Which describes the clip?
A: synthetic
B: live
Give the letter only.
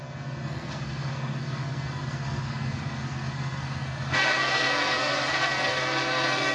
A